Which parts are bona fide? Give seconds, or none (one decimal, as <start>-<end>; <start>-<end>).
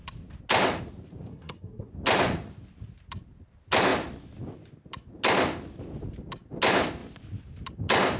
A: 0.0-1.3; 1.9-8.2